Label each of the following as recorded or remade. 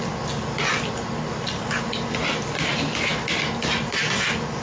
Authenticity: recorded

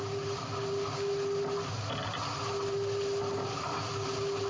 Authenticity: recorded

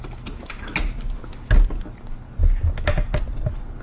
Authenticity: recorded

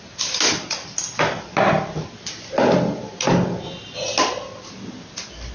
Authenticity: recorded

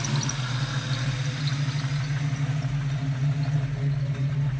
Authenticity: recorded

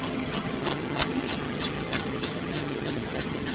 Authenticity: remade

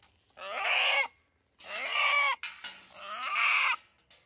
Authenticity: recorded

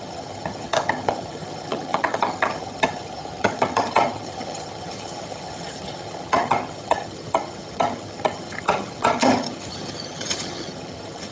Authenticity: remade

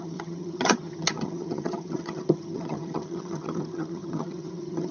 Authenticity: remade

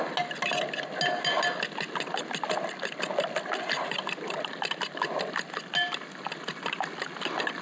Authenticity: recorded